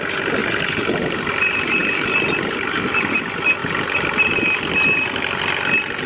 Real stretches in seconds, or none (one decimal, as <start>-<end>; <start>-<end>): 0.0-6.1